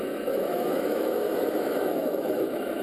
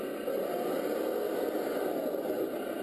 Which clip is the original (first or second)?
second